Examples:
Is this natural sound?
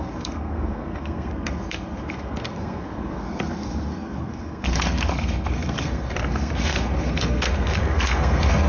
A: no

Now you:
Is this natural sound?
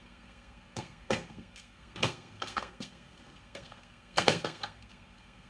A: no